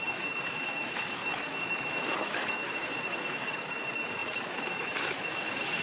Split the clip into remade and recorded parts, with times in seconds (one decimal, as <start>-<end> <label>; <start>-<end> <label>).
0.0-5.8 remade